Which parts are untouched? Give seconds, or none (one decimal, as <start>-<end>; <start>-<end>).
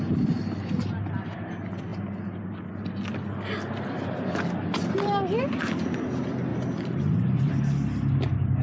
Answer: 0.0-6.5; 7.6-8.6